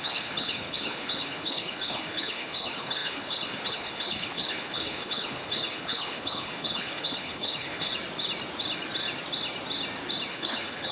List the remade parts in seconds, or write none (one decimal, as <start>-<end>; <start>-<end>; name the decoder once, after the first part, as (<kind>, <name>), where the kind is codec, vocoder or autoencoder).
0.0-7.9 (codec, HILCodec); 10.3-10.9